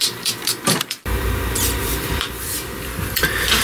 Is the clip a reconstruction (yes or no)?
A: yes